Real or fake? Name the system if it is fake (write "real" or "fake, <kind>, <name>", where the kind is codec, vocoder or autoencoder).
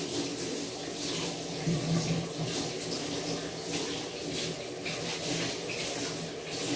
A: real